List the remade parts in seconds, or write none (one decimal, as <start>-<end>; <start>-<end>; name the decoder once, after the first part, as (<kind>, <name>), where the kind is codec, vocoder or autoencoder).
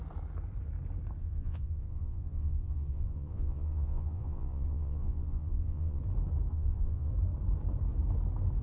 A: 1.2-6.0 (vocoder, Vocos); 6.5-7.1